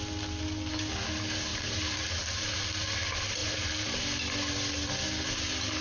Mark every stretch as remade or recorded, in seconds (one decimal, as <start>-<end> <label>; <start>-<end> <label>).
0.0-1.5 recorded; 1.5-2.6 remade; 2.6-3.4 recorded; 3.4-4.0 remade; 4.0-5.8 recorded